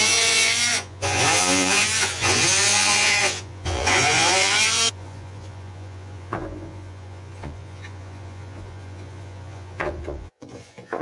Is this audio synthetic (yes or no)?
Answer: yes